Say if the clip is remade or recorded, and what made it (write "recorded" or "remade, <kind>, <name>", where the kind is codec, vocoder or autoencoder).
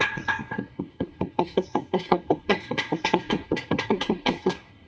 remade, codec, SNAC